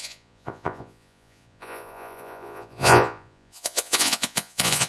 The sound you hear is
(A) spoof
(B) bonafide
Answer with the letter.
A